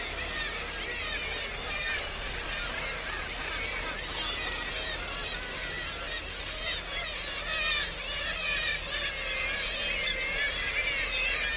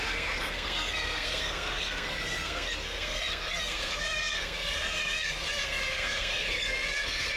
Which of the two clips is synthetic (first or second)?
second